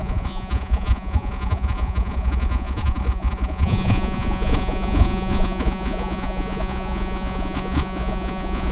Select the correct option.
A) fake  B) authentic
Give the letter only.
A